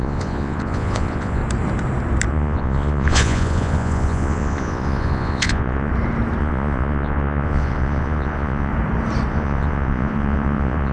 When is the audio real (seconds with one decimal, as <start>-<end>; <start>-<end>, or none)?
1.4-2.3; 5.9-6.4; 8.7-9.3